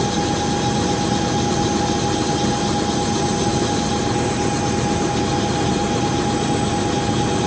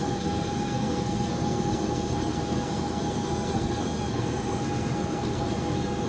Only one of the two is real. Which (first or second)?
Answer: first